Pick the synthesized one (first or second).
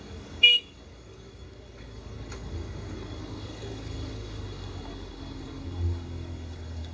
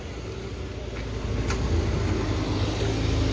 first